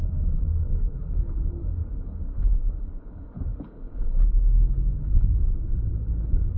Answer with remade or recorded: remade